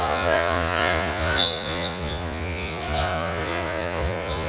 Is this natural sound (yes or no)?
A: no